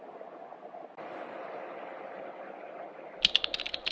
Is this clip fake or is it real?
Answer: real